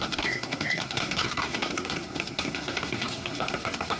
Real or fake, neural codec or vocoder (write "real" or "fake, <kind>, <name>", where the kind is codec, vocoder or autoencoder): fake, codec, SNAC